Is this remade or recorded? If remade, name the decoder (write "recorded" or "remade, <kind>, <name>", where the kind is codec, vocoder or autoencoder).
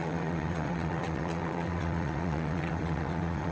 remade, vocoder, WaveNeXt